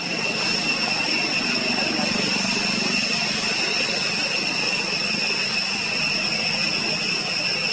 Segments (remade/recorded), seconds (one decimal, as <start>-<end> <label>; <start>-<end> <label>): 0.0-7.7 recorded

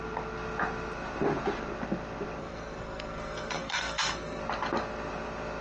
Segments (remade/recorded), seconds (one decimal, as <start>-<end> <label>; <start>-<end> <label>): 0.0-2.4 recorded; 2.4-4.4 remade; 4.4-5.6 recorded

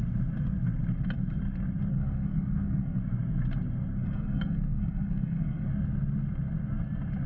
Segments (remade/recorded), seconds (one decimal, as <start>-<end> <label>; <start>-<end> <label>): 0.0-1.9 recorded; 1.9-3.0 remade; 3.0-3.9 recorded; 3.9-5.7 remade; 5.7-7.3 recorded

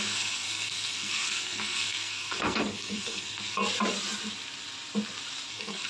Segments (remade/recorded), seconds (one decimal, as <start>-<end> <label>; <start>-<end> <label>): 0.0-3.6 remade; 3.6-5.5 recorded; 5.5-5.9 remade